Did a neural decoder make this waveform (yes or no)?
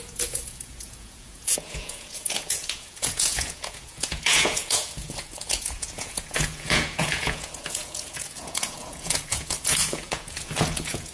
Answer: yes